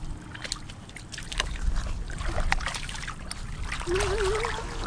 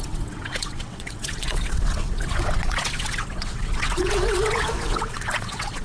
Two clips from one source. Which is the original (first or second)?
first